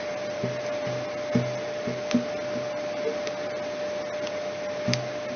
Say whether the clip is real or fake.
real